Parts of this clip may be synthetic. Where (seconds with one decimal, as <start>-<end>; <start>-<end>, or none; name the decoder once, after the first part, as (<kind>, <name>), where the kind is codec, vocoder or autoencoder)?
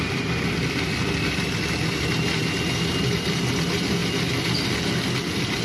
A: none